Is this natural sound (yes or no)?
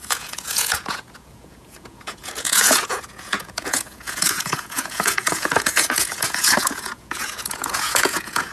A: no